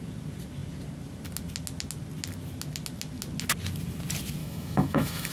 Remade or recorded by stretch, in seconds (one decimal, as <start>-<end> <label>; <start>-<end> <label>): 0.0-4.4 recorded; 4.4-5.3 remade